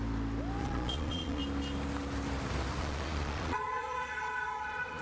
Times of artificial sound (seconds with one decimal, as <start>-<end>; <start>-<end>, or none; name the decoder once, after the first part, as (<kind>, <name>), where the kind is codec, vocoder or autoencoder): 0.6-1.4 (vocoder, Vocos); 2.8-5.0